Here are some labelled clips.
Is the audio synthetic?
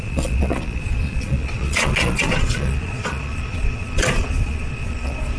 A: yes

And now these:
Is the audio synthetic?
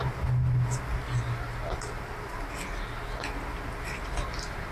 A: no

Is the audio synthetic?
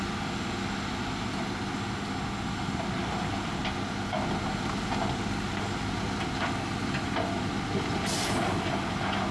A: no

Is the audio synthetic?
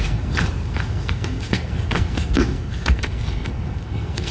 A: yes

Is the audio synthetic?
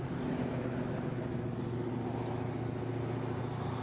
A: no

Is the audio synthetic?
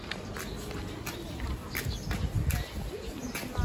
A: no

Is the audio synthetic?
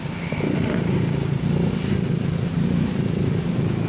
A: no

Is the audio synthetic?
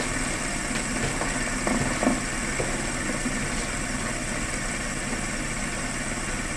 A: no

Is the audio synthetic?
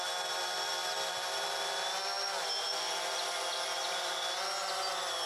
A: no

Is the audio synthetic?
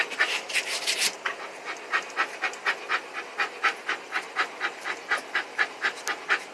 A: no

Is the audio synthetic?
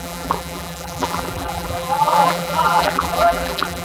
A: yes